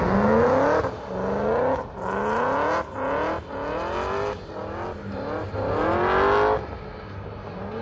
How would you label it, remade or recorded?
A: recorded